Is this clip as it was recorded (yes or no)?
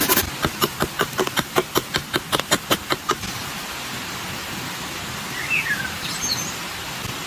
yes